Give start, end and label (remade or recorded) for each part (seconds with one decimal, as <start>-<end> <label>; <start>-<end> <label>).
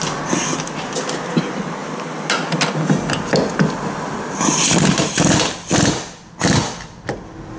0.0-1.8 recorded; 1.8-5.9 remade; 5.9-7.6 recorded